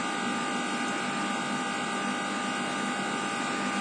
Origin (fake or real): real